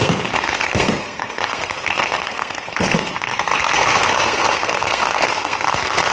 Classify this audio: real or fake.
fake